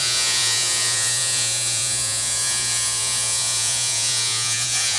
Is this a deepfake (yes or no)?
yes